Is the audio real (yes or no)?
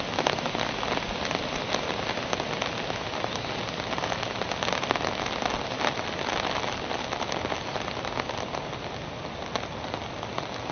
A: yes